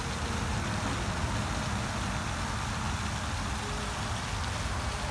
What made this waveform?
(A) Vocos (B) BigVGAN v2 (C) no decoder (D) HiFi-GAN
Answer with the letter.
C